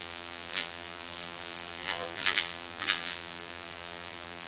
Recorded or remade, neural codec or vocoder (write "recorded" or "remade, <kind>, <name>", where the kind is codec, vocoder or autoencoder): remade, vocoder, BigVGAN v2